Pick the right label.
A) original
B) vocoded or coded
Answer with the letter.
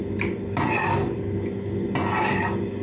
A